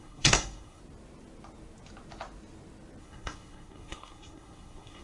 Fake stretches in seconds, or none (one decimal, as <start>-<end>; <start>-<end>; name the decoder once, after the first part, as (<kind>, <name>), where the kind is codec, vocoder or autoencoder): 0.0-0.8 (codec, SNAC); 3.0-5.0